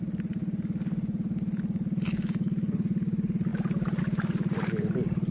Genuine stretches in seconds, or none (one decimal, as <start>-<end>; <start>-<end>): 0.0-5.3